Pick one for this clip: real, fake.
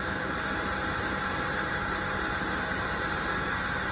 real